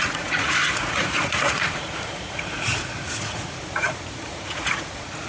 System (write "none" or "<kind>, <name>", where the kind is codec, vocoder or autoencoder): vocoder, Vocos